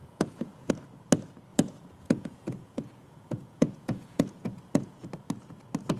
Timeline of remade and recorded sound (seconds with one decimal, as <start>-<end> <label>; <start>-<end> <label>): 0.0-0.7 remade; 0.7-1.5 recorded; 1.5-5.1 remade; 5.1-6.0 recorded